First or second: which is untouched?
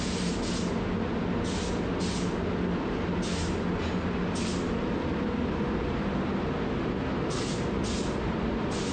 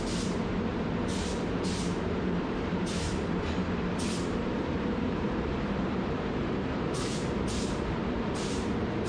first